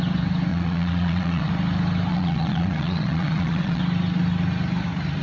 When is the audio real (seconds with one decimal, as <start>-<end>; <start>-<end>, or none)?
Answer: 0.0-0.5; 1.5-2.1; 3.8-5.2